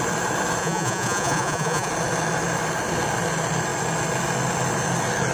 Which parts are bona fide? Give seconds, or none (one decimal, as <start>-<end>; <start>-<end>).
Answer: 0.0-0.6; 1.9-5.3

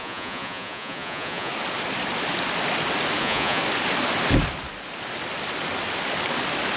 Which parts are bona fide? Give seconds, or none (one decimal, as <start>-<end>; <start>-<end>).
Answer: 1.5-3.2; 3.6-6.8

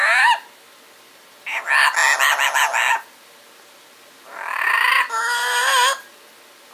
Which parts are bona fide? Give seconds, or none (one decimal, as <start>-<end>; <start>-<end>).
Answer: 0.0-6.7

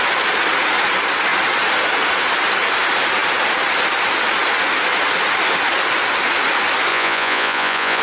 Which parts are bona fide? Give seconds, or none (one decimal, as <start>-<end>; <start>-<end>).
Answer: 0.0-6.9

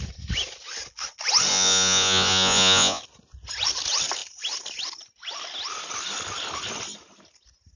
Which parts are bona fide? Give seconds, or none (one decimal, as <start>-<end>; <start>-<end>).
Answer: 0.0-1.5; 3.0-7.8